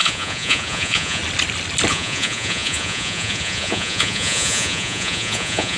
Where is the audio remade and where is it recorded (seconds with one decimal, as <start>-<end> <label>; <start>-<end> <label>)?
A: 0.0-1.2 remade; 1.2-1.9 recorded; 1.9-5.8 remade